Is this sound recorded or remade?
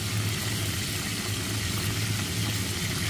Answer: recorded